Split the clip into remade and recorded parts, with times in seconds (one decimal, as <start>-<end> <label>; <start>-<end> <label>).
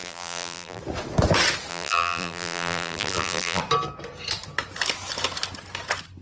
0.0-0.8 remade; 0.8-1.7 recorded; 1.7-3.6 remade; 3.6-6.2 recorded